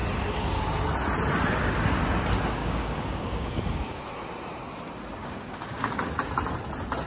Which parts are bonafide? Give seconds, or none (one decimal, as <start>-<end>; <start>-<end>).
0.0-2.6; 4.0-5.2; 6.0-7.1